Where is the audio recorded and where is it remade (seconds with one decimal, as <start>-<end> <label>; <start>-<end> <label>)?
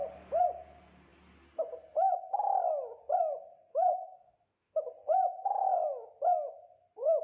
0.0-3.7 recorded; 3.7-4.8 remade; 4.8-7.2 recorded